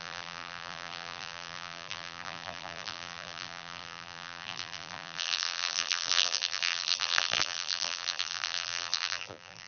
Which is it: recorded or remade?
remade